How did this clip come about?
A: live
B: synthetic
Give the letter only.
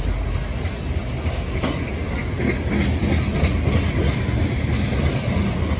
A